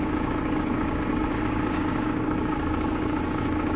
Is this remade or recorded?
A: remade